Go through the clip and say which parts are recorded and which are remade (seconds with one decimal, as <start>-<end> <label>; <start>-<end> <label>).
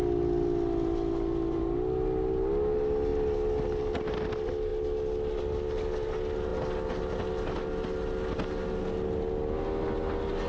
0.0-10.5 recorded